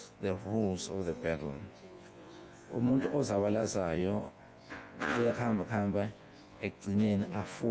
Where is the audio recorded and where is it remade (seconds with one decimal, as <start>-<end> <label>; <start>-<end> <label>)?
0.0-7.7 remade